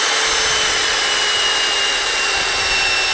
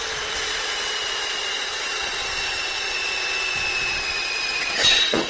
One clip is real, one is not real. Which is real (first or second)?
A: first